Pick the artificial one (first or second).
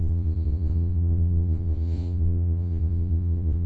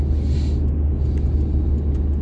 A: first